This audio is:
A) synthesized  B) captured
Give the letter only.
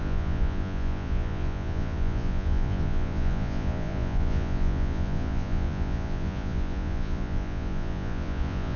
A